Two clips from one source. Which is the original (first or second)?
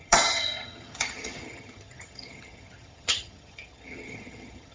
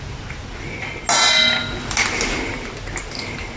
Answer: second